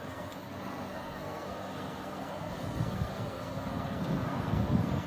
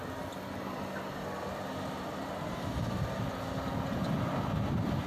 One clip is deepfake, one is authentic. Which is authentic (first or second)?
second